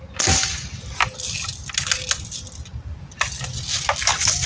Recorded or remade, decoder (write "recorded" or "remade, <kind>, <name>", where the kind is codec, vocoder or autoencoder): recorded